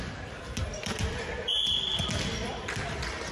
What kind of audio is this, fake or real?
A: fake